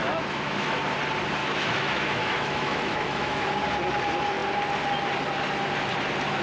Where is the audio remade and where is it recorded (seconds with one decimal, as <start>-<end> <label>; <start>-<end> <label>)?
0.0-0.8 remade; 0.8-1.4 recorded; 1.4-3.5 remade; 3.5-6.4 recorded